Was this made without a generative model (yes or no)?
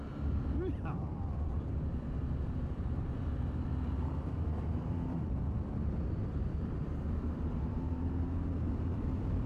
no